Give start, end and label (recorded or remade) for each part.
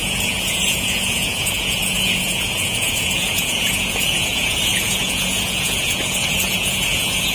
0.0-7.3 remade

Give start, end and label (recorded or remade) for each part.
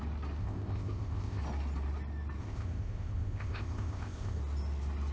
0.0-0.4 recorded; 0.4-1.4 remade; 1.4-2.4 recorded; 2.4-4.4 remade; 4.4-5.1 recorded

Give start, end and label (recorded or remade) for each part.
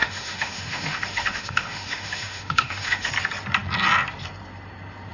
0.0-3.1 remade; 3.1-5.1 recorded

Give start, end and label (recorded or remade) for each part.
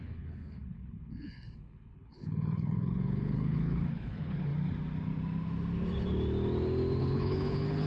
0.0-4.5 remade; 4.5-7.0 recorded; 7.0-7.9 remade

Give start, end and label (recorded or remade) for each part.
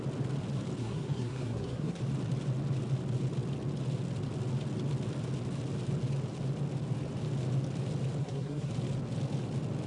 0.0-0.8 recorded; 0.8-2.0 remade; 2.0-8.2 recorded; 8.2-8.7 remade; 8.7-9.9 recorded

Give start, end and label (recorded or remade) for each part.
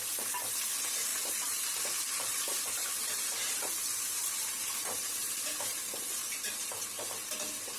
0.0-7.8 remade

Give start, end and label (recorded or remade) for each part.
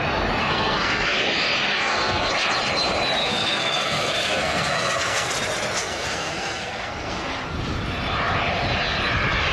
0.0-0.4 recorded; 0.4-1.2 remade; 1.2-1.7 recorded; 1.7-2.3 remade; 2.3-3.2 recorded; 3.2-5.3 remade; 5.3-5.8 recorded; 5.8-7.3 remade; 7.3-9.5 recorded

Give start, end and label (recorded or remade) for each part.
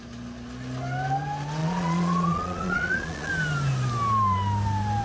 0.0-1.6 recorded; 1.6-3.3 remade; 3.3-5.0 recorded